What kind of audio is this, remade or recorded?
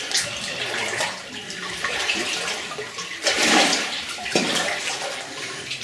remade